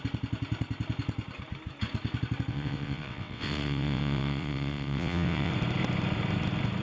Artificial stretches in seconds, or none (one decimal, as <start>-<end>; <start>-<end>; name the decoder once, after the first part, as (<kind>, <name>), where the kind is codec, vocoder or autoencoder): 2.5-5.5 (vocoder, WaveNeXt)